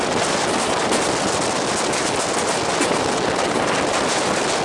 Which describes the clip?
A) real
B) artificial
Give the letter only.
A